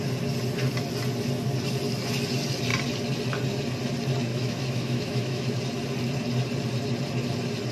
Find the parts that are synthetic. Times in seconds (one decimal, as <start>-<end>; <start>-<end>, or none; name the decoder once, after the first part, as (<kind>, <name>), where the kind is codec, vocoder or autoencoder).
4.3-5.6 (autoencoder, DAC-VAE)